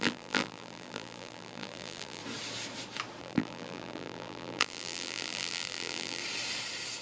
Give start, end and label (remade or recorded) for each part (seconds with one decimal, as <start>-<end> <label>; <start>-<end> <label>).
0.0-2.2 remade; 2.2-3.2 recorded; 3.2-6.2 remade; 6.2-7.0 recorded